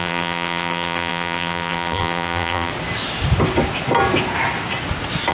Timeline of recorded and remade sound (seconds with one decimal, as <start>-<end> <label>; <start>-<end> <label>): 0.0-2.7 remade; 2.7-5.3 recorded